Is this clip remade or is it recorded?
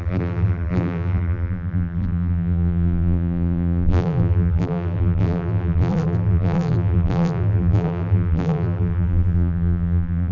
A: remade